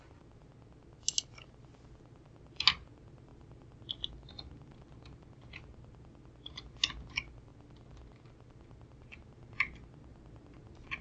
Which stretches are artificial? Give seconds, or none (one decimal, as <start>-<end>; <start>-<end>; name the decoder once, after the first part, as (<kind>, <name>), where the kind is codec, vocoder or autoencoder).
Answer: none